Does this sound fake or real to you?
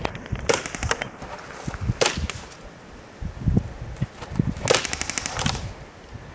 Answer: real